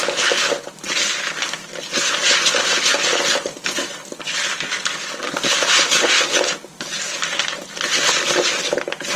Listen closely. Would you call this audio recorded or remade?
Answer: recorded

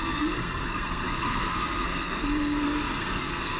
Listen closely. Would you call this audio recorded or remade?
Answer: remade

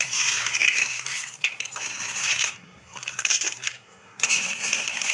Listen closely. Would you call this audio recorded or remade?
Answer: remade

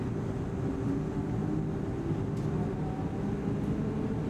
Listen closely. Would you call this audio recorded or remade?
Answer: recorded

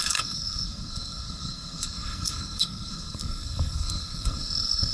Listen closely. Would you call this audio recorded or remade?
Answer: remade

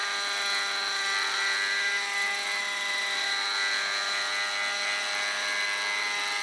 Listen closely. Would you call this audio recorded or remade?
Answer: recorded